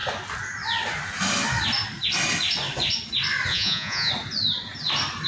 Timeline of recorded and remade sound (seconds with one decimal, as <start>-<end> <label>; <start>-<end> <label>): 0.0-3.5 recorded; 3.5-4.1 remade; 4.1-5.3 recorded